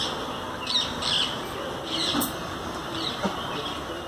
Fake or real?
real